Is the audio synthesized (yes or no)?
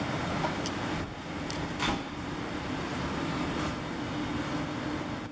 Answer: no